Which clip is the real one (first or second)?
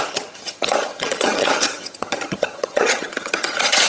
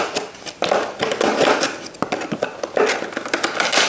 second